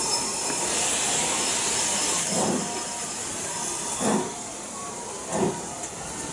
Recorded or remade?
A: recorded